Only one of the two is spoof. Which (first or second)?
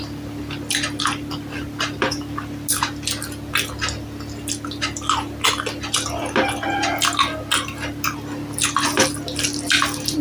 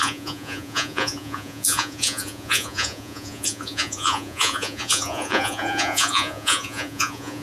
second